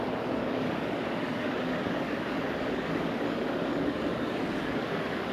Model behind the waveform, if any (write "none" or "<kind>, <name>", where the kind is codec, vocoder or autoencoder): codec, DAC